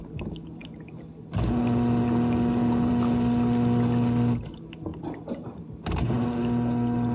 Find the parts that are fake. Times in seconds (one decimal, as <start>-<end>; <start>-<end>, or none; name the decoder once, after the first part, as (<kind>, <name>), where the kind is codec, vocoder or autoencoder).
none